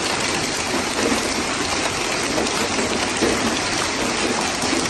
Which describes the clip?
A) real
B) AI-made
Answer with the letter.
A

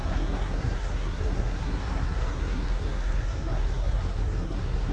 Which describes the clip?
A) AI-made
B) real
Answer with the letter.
A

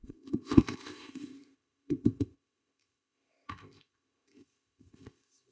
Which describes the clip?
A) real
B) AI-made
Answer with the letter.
B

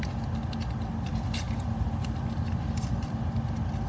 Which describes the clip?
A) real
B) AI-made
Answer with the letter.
A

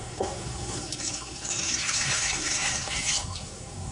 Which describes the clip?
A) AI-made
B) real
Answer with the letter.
A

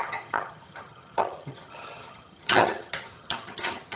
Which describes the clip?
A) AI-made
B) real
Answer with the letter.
A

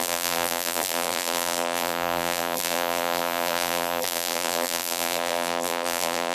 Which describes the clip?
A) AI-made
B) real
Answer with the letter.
A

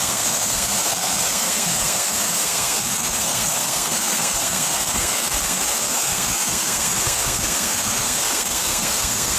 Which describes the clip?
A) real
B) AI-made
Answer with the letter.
B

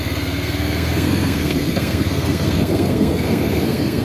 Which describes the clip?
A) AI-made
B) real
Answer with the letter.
A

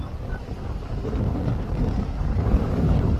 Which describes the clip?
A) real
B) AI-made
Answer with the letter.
A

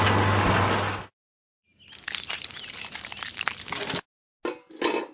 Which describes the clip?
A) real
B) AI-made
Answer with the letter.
A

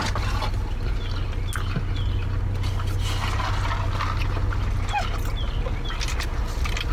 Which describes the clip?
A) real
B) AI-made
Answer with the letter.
A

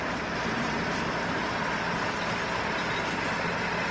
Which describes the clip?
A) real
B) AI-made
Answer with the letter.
A